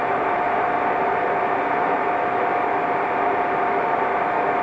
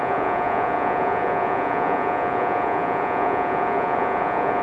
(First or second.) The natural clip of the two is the first